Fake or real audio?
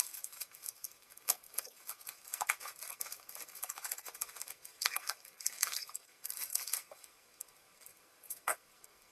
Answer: fake